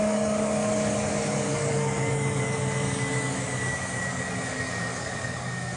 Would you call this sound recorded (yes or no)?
no